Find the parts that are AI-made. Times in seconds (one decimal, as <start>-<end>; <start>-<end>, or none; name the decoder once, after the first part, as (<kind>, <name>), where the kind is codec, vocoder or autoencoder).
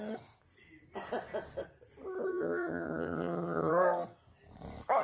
2.3-3.7 (vocoder, HiFi-GAN)